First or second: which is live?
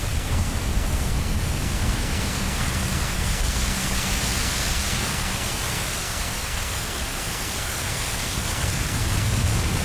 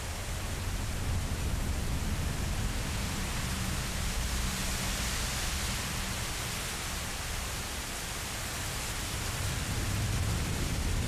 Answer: second